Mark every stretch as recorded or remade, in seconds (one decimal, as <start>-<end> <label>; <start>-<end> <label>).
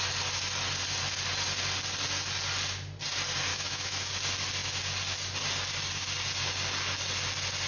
0.0-3.5 recorded; 3.5-4.1 remade; 4.1-7.7 recorded